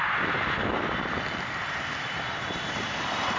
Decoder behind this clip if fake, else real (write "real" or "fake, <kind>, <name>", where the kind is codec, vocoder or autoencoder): real